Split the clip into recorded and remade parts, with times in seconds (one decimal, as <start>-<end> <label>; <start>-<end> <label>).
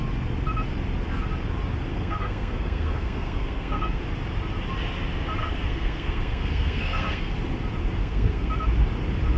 0.0-1.9 recorded; 1.9-4.0 remade; 4.0-5.4 recorded; 5.4-7.3 remade; 7.3-8.0 recorded; 8.0-8.5 remade; 8.5-9.4 recorded